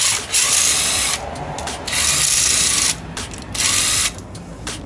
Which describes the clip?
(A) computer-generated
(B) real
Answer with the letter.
B